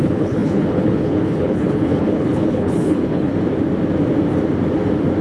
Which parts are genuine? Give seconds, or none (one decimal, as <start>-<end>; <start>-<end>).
3.3-5.2